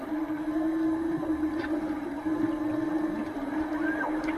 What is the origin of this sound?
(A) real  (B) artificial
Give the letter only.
A